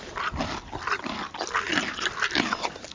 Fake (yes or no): no